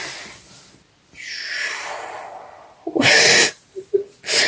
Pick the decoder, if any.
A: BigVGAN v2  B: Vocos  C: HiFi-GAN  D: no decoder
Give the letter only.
D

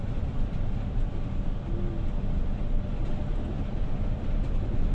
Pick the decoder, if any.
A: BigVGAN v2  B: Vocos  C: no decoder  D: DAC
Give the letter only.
C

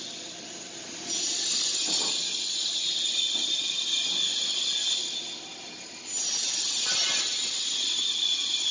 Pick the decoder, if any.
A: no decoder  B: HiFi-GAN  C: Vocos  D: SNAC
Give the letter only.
A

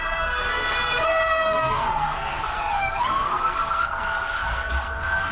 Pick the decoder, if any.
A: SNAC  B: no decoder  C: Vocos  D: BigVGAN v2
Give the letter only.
A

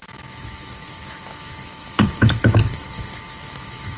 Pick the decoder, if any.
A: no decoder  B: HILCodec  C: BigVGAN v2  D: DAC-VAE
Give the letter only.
D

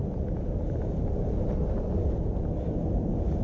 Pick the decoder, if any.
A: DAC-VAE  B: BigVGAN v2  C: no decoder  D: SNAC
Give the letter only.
C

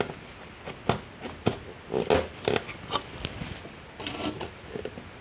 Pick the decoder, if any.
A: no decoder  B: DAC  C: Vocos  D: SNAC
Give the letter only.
A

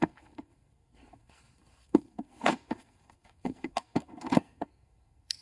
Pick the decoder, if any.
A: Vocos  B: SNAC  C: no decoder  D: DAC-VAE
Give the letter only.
B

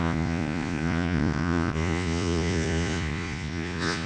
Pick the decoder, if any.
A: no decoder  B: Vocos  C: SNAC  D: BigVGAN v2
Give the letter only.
B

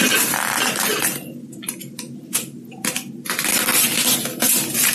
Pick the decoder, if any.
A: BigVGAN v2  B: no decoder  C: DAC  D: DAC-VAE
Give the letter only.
B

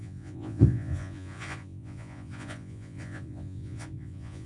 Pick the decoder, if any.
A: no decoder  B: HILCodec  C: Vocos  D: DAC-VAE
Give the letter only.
C